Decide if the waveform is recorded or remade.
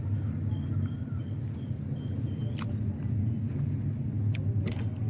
recorded